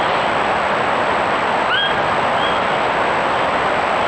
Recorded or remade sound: recorded